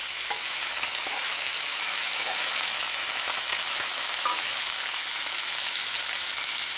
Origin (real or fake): fake